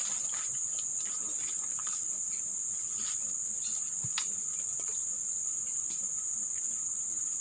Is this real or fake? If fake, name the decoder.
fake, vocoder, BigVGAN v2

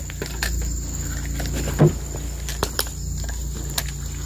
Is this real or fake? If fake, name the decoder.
real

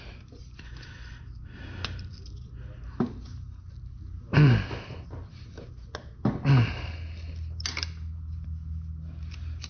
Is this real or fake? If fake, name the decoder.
real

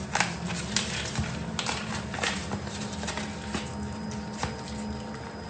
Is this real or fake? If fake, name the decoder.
real